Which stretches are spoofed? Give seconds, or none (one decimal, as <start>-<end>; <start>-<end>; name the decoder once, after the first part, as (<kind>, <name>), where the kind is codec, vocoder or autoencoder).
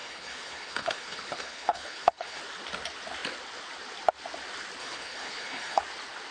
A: 0.0-2.4 (codec, HILCodec); 4.8-5.8